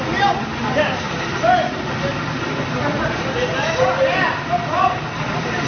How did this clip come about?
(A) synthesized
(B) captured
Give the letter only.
B